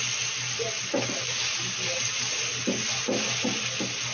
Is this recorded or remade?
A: recorded